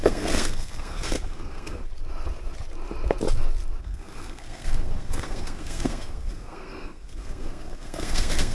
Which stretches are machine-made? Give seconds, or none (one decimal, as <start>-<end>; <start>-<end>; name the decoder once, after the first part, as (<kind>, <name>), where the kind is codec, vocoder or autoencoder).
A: 0.0-1.8 (codec, SNAC); 3.8-8.5